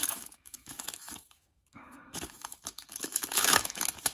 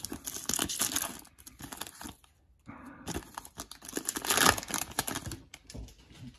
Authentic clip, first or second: second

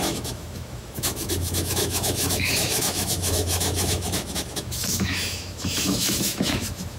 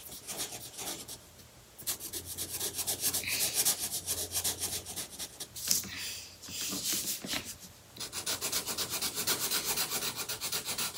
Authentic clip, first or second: second